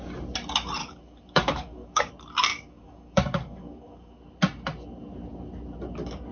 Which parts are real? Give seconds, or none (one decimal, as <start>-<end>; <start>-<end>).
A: 0.0-0.8; 2.1-2.5; 4.2-6.3